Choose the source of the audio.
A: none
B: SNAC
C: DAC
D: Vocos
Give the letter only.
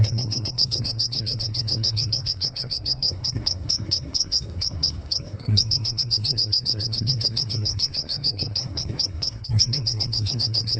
B